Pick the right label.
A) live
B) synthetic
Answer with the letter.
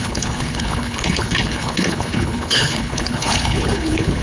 B